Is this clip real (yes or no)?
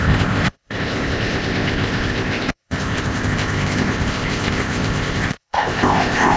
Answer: no